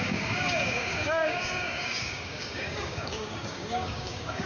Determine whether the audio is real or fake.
fake